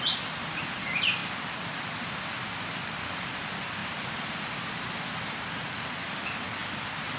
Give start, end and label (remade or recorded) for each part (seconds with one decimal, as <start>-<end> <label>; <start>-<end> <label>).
0.0-3.8 recorded; 3.8-4.8 remade; 4.8-7.2 recorded